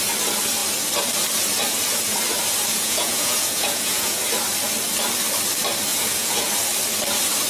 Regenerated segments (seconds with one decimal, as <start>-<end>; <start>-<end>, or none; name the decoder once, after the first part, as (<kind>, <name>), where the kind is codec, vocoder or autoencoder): 2.7-4.2 (vocoder, Vocos); 5.9-6.5